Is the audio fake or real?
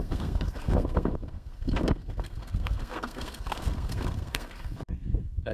fake